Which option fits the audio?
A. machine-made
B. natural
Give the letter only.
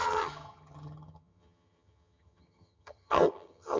A